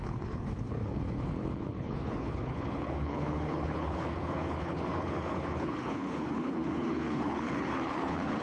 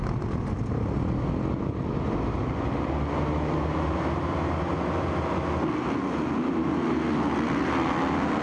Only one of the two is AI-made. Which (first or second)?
first